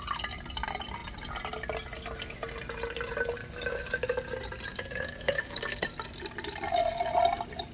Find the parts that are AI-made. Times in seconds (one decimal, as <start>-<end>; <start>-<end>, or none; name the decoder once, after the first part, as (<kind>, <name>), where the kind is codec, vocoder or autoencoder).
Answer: 3.4-4.3 (codec, DAC); 4.7-5.8